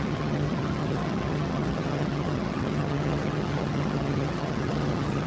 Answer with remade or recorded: remade